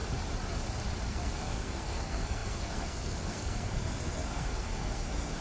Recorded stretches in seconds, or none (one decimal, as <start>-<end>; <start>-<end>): 0.0-1.1